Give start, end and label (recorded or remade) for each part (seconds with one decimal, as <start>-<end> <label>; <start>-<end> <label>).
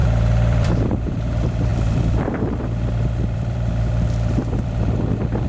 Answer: 0.0-5.5 remade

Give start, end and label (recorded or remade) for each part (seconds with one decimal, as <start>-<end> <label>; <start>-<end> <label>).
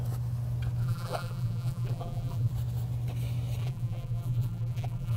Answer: 0.0-0.8 recorded; 0.8-2.5 remade; 2.5-3.6 recorded; 3.6-5.2 remade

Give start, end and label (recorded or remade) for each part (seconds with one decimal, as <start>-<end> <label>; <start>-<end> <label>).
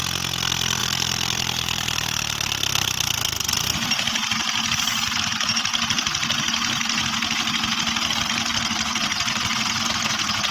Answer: 0.0-0.8 recorded; 0.8-3.1 remade; 3.1-10.5 recorded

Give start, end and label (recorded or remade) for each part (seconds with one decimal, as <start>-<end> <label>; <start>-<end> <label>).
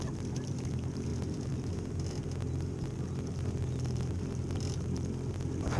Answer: 0.0-1.1 recorded; 1.1-1.7 remade; 1.7-5.8 recorded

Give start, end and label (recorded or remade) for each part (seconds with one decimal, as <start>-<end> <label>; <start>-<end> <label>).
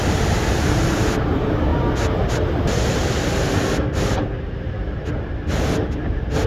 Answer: 0.0-6.5 recorded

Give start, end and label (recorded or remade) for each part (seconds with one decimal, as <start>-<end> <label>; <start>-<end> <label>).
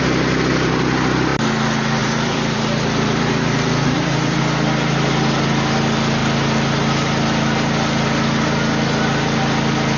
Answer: 0.0-2.0 recorded; 2.0-4.4 remade; 4.4-10.0 recorded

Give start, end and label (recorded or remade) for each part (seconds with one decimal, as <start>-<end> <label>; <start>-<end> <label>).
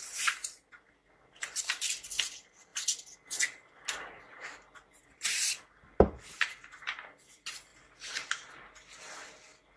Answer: 0.0-9.8 recorded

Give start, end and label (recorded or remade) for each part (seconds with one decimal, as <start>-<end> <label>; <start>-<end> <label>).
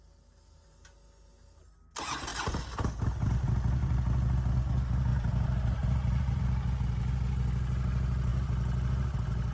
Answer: 0.0-2.3 recorded; 2.3-2.9 remade; 2.9-5.1 recorded; 5.1-6.4 remade; 6.4-9.5 recorded